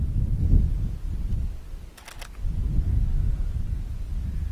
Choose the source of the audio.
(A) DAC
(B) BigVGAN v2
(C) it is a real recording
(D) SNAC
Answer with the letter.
C